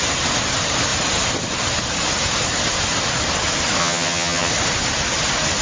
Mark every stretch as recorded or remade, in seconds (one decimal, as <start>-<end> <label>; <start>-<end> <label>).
0.0-3.8 recorded; 3.8-4.5 remade; 4.5-5.6 recorded